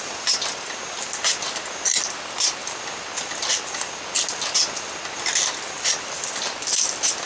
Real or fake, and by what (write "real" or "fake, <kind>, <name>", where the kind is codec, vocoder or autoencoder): real